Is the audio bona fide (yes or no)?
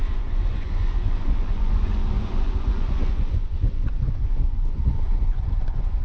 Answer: no